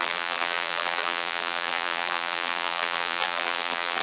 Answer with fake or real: fake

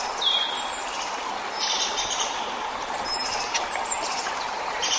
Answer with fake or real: fake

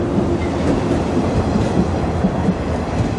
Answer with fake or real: real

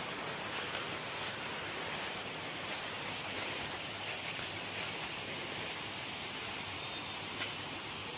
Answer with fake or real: real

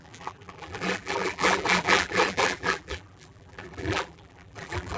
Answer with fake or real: fake